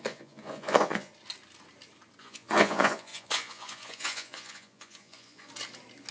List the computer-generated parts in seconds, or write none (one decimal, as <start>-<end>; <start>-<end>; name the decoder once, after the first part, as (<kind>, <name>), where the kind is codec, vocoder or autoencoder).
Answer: 0.0-1.1 (vocoder, Vocos); 2.2-5.5